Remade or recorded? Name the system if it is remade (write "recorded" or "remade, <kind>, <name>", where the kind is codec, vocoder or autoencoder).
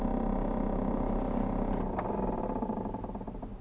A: recorded